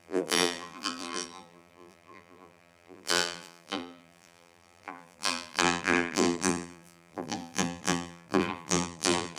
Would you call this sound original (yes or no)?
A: no